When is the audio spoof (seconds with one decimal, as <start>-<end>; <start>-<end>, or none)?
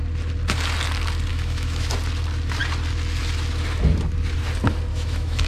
1.3-1.9; 4.9-5.5